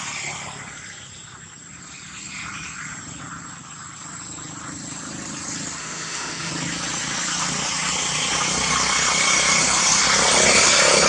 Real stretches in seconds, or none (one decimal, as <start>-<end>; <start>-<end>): 0.0-5.8; 6.5-11.1